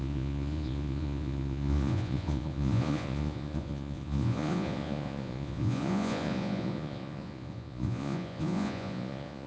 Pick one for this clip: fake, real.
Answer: fake